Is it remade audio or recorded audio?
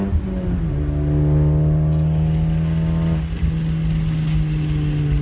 recorded